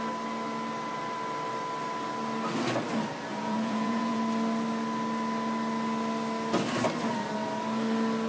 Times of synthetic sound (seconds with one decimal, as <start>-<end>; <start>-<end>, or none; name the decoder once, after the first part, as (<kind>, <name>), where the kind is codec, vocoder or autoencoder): 3.3-4.2 (vocoder, Vocos)